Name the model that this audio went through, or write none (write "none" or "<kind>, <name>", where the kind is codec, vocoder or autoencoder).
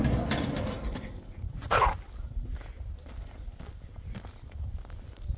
vocoder, BigVGAN v2